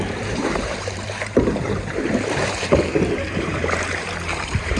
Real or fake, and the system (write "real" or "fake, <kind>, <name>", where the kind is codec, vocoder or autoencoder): fake, vocoder, BigVGAN v2